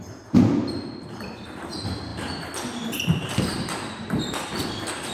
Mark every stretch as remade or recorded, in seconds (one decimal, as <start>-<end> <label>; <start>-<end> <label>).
0.0-5.1 recorded